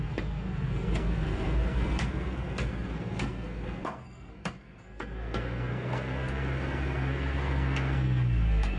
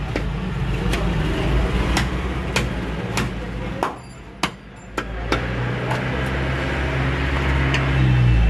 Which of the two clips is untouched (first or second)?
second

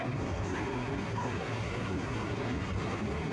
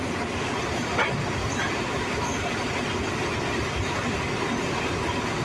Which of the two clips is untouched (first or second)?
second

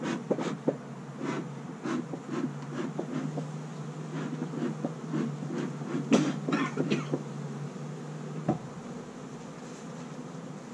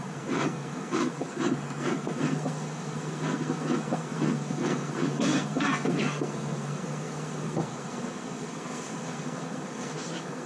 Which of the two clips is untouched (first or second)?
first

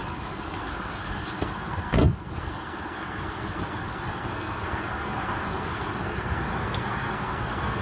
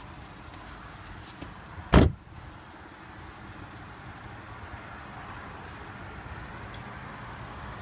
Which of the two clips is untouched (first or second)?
second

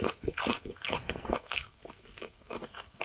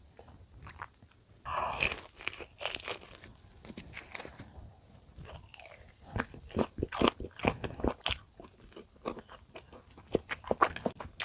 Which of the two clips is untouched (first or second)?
second